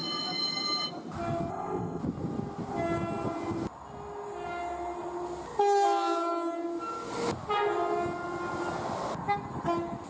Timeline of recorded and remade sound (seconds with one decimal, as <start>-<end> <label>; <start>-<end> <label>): 0.0-1.5 recorded; 1.5-2.0 remade; 2.0-10.1 recorded